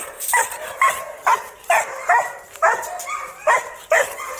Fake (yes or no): no